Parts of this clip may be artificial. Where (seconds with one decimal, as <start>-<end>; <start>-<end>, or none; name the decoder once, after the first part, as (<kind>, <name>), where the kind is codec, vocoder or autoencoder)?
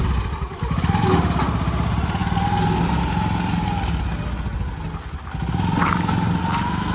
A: 0.0-1.0 (vocoder, BigVGAN v2)